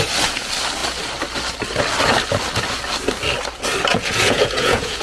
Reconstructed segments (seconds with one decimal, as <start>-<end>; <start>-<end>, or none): 3.9-5.0